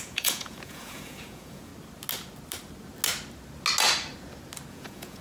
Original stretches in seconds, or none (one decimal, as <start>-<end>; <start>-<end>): 1.7-4.7